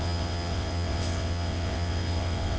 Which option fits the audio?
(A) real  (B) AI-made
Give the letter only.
B